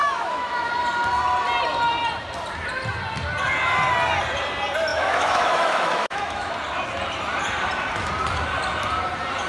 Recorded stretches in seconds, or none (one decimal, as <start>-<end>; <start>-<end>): 0.7-4.9; 6.5-9.5

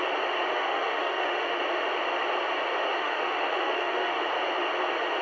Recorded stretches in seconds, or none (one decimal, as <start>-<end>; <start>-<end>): 0.0-0.5; 1.6-3.0; 4.2-5.2

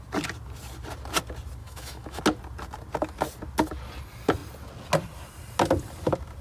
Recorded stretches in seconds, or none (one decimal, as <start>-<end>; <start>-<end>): 0.0-1.6; 2.2-6.4

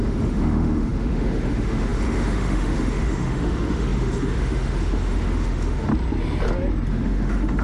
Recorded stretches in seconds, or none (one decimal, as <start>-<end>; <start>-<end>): 5.9-6.9

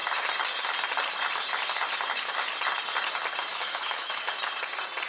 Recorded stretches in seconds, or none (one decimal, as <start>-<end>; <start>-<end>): 0.0-3.5; 4.1-5.1

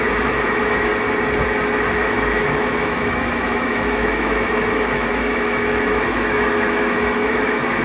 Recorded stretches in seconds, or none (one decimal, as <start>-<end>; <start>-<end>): 0.9-1.9